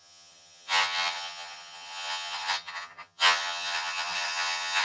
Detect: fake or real fake